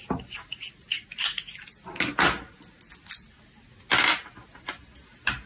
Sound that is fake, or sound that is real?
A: real